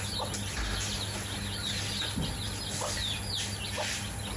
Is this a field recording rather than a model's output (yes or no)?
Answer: yes